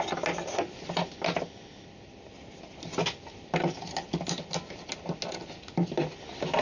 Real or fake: real